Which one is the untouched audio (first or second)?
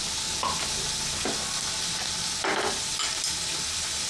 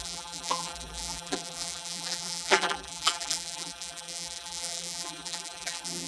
first